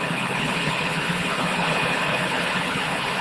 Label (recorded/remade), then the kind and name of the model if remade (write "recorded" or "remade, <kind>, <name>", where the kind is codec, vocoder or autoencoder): remade, codec, HILCodec